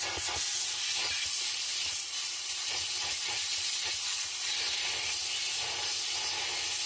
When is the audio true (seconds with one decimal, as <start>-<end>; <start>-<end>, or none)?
0.0-1.7; 5.2-6.9